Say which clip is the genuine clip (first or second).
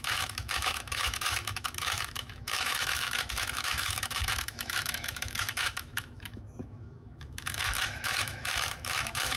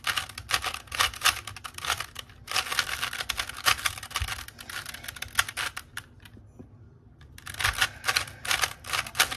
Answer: second